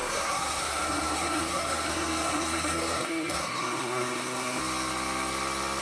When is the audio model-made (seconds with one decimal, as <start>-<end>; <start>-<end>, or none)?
0.0-4.6